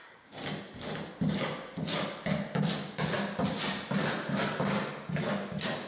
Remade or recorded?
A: recorded